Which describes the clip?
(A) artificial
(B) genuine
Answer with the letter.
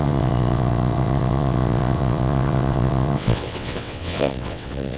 A